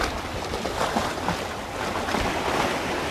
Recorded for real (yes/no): yes